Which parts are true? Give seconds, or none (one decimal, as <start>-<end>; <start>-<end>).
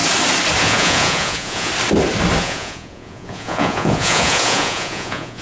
0.0-0.6; 1.7-2.4